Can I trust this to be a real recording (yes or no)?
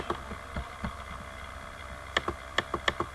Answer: yes